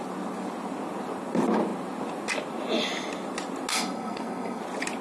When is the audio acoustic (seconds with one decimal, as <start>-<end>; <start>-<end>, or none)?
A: 0.0-3.7; 4.6-5.0